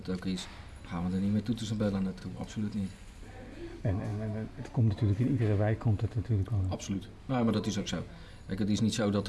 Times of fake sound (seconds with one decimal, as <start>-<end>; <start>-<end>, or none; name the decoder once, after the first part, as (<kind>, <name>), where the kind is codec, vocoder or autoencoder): 2.2-3.3 (vocoder, Vocos)